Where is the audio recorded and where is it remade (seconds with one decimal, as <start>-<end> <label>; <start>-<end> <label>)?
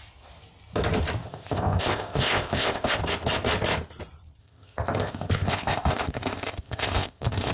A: 0.0-1.2 recorded; 1.2-3.0 remade; 3.0-4.4 recorded; 4.4-7.5 remade